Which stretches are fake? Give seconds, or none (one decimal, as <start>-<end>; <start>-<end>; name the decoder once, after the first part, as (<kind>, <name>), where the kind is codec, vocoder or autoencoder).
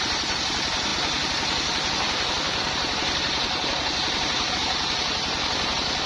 none